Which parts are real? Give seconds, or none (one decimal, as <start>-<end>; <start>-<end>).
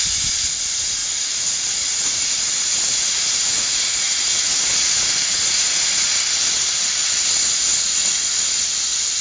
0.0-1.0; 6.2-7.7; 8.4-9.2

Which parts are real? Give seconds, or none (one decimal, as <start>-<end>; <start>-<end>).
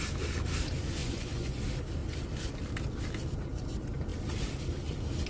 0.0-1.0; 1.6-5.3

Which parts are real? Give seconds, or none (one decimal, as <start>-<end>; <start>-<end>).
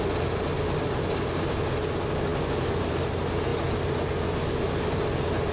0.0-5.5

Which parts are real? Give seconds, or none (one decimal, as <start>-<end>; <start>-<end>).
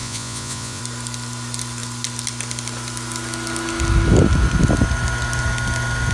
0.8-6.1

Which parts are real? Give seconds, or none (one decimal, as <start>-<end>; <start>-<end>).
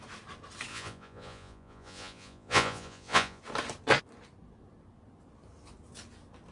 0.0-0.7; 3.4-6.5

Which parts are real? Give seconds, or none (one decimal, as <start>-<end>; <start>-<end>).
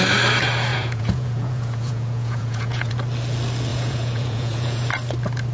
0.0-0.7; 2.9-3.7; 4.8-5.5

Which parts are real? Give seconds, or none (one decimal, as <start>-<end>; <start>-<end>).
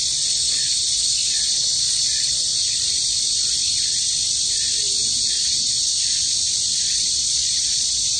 2.5-5.3; 5.9-6.8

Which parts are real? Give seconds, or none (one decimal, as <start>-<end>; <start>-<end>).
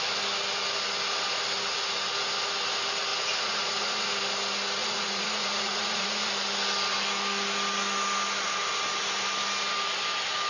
0.0-3.1; 4.1-4.8; 6.3-10.5